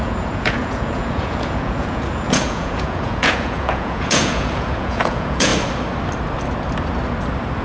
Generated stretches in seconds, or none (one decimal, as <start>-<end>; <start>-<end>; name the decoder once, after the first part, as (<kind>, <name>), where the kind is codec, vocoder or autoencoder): 0.0-5.5 (vocoder, Vocos)